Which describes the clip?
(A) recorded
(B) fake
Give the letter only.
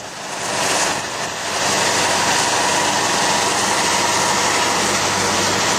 A